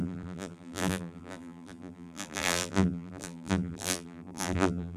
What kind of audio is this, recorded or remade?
remade